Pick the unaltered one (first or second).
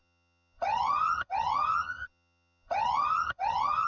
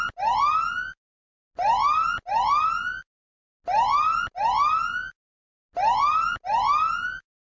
second